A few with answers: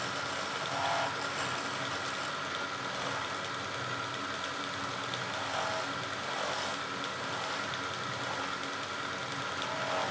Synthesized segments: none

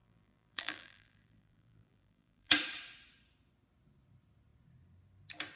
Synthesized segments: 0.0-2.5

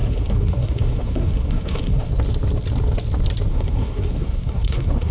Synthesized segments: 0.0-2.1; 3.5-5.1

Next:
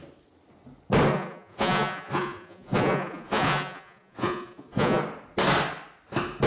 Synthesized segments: 1.1-5.0